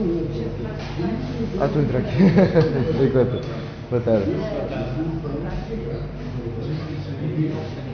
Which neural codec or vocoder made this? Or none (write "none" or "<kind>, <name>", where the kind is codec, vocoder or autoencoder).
none